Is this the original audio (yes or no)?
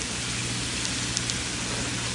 yes